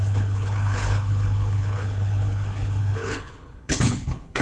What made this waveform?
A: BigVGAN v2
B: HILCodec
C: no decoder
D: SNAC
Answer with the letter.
B